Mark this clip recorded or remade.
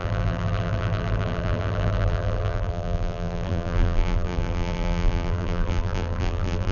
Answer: remade